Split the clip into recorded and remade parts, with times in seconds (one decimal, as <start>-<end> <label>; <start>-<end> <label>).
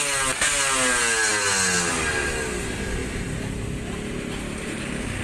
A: 0.0-5.2 recorded